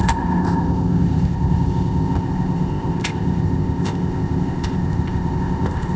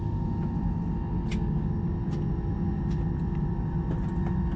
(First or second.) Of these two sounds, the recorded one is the second